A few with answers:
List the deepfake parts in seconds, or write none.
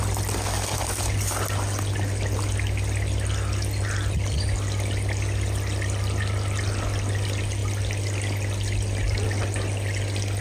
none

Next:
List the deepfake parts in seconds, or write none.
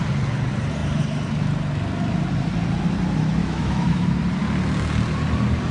3.4-4.2 (autoencoder, DAC-VAE)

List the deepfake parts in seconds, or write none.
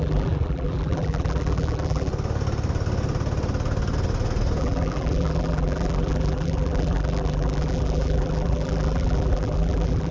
0.0-2.1 (vocoder, BigVGAN v2); 4.6-10.1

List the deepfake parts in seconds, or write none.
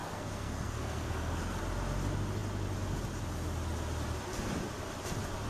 0.0-1.6 (codec, SNAC)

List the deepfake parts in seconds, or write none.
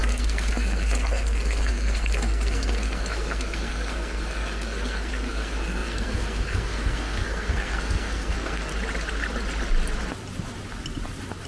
0.0-8.7 (codec, SNAC)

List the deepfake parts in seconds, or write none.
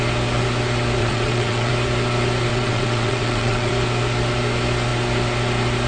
1.0-1.7 (vocoder, WaveNeXt); 2.5-3.7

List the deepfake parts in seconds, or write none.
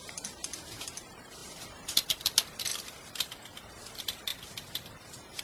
1.4-2.1 (vocoder, BigVGAN v2); 2.7-3.7